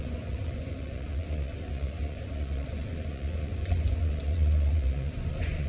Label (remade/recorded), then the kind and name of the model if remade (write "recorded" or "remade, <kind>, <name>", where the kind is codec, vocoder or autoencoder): remade, vocoder, Vocos